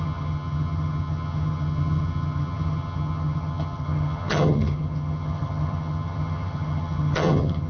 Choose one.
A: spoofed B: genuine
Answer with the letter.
A